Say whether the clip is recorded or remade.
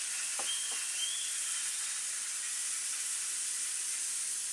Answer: recorded